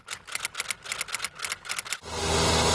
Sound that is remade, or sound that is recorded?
recorded